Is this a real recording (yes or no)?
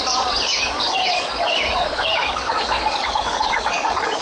no